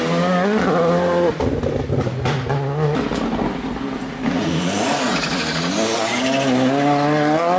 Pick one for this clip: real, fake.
real